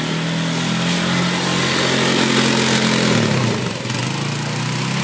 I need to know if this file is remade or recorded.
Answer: recorded